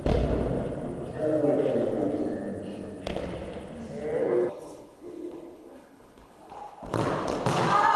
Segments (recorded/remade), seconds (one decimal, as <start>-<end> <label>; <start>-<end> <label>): 0.0-4.2 recorded; 4.2-6.5 remade; 6.5-8.0 recorded